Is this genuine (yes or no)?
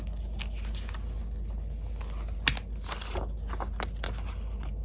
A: yes